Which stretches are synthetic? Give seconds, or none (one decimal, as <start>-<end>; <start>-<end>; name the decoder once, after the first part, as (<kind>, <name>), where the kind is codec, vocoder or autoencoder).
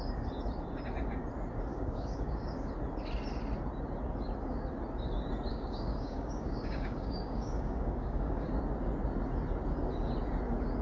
1.7-2.7 (codec, DAC); 5.5-8.5